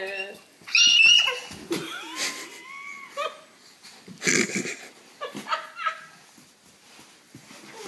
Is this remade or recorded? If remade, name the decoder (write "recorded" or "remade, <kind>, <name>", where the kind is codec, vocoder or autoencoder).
recorded